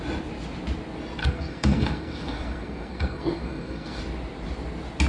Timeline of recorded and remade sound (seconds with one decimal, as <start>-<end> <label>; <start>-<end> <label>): 0.0-1.2 recorded; 1.2-4.0 remade; 4.0-5.1 recorded